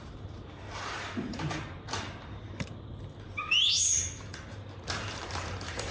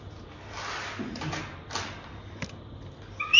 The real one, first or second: second